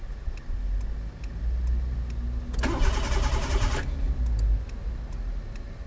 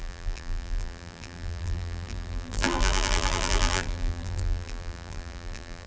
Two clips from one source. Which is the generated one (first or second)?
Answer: second